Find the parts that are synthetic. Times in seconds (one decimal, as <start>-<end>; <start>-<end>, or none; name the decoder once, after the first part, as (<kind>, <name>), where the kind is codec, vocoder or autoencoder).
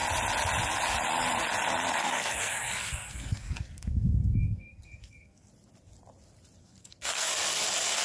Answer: 2.0-5.5 (codec, SNAC); 6.6-7.3